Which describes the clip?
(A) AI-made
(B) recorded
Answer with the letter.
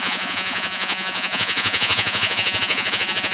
A